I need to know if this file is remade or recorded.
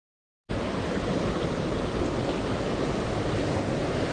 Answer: recorded